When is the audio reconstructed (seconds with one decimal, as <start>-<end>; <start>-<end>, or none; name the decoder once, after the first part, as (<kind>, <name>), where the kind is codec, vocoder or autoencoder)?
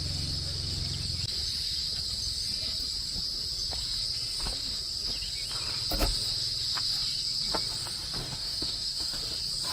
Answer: 8.2-9.2 (codec, DAC)